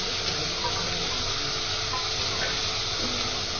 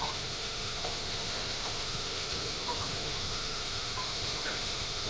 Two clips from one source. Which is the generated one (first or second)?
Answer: second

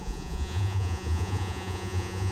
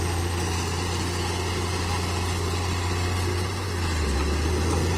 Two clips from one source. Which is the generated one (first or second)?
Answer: first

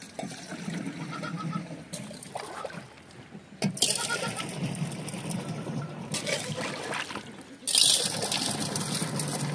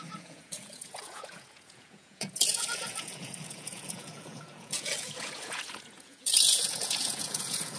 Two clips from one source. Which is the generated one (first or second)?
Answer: second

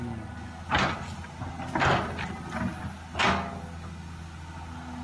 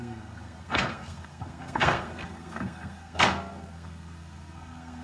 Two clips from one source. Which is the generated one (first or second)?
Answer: second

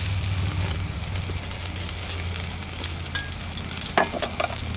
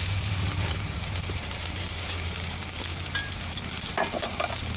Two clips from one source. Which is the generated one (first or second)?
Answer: second